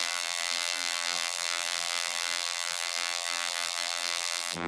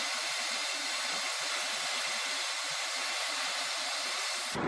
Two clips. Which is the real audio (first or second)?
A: second